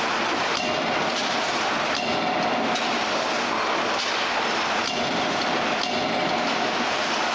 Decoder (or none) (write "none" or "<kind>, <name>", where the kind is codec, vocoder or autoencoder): none